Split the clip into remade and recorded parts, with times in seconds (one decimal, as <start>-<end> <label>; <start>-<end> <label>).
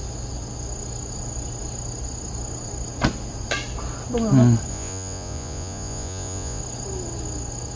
0.0-4.7 recorded; 4.7-6.6 remade; 6.6-7.8 recorded